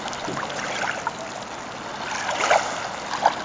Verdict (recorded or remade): recorded